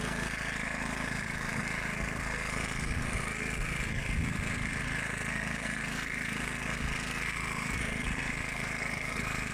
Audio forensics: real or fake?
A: fake